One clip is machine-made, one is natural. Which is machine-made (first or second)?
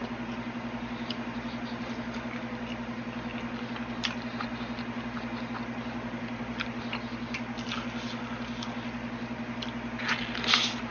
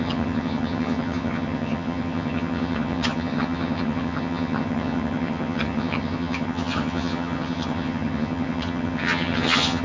second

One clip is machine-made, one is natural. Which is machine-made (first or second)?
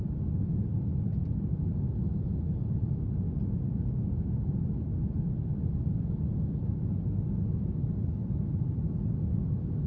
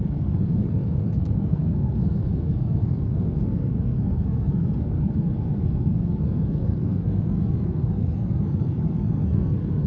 second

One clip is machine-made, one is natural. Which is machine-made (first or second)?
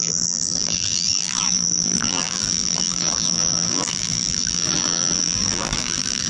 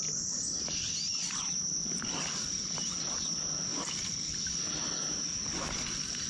first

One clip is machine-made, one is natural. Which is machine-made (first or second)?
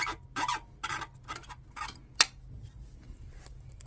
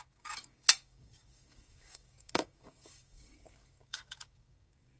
second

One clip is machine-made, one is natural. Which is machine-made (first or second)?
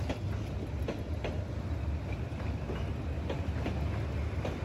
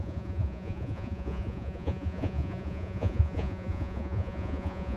second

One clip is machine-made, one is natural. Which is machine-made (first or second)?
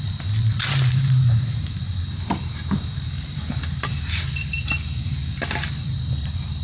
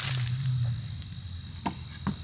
first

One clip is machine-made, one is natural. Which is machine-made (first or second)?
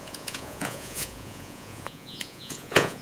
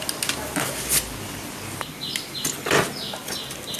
first